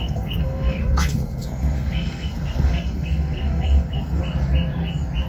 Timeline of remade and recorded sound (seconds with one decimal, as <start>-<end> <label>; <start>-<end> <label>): 0.0-4.2 remade; 4.2-5.3 recorded